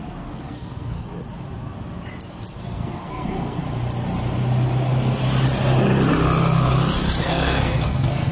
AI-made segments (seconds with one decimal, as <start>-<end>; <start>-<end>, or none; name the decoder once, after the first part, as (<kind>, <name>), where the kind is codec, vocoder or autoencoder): 0.0-1.1 (codec, SNAC); 2.6-3.6; 7.2-8.3